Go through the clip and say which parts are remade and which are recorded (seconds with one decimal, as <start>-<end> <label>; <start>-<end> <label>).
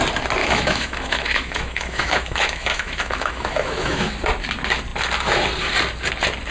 0.0-0.4 recorded; 0.4-4.1 remade; 4.1-6.5 recorded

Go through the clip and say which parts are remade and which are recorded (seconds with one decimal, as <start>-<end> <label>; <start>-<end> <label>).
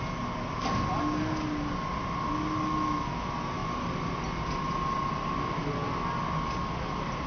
0.0-7.3 recorded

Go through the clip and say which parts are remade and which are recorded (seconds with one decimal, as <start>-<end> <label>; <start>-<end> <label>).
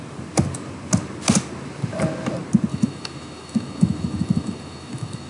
0.0-2.7 recorded; 2.7-5.3 remade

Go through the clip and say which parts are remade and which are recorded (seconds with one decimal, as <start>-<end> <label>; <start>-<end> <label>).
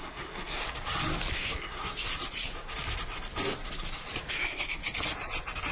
0.0-0.6 remade; 0.6-1.3 recorded; 1.3-2.1 remade; 2.1-4.3 recorded; 4.3-4.8 remade; 4.8-5.7 recorded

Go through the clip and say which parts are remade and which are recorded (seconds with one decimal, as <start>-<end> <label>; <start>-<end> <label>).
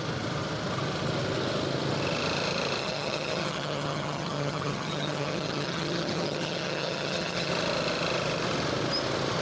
0.0-2.8 recorded; 2.8-7.5 remade; 7.5-9.4 recorded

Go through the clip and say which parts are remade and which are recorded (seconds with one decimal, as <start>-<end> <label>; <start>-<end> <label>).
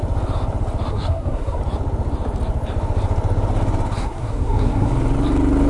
0.0-0.9 recorded; 0.9-1.6 remade; 1.6-4.0 recorded; 4.0-4.9 remade; 4.9-5.7 recorded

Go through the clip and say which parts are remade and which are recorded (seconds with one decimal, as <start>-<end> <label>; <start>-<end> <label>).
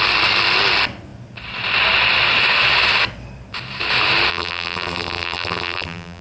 0.0-4.3 recorded; 4.3-6.2 remade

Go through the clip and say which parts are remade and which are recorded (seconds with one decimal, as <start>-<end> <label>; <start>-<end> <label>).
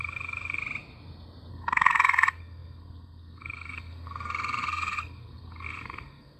0.0-0.6 remade; 0.6-1.5 recorded; 1.5-6.4 remade